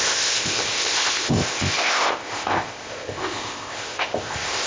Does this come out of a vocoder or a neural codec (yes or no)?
yes